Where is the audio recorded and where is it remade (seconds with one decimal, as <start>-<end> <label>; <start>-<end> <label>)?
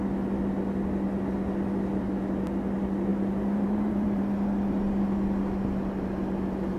0.0-3.1 recorded; 3.1-4.2 remade; 4.2-6.8 recorded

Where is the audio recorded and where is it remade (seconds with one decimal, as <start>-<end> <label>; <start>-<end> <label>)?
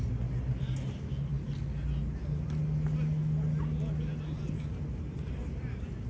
0.0-6.1 recorded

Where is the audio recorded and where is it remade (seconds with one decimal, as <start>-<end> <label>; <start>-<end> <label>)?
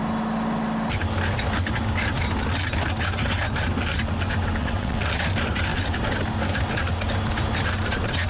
0.0-4.6 recorded; 4.6-5.2 remade; 5.2-8.3 recorded